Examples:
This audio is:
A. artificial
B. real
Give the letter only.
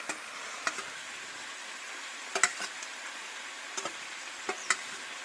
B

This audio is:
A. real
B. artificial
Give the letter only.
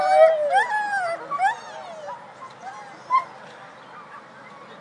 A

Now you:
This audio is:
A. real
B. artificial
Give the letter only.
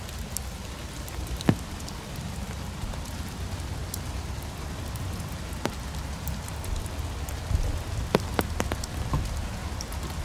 A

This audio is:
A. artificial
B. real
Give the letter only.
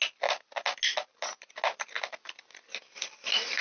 B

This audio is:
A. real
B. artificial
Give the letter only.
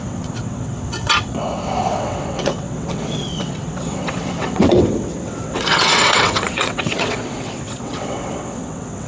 B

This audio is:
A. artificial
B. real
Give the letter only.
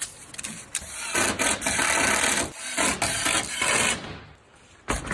B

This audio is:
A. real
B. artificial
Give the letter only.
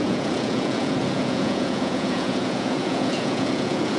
B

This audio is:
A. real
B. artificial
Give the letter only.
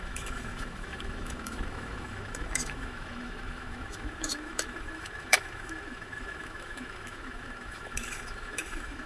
B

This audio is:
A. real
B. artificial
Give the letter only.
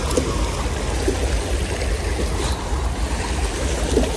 A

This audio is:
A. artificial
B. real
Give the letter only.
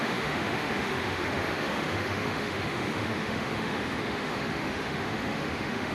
A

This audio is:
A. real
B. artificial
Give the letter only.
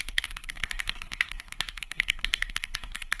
B